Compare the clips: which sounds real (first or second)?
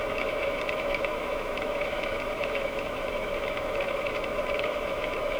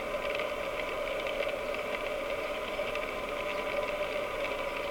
second